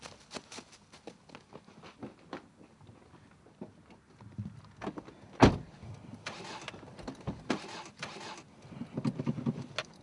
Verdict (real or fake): real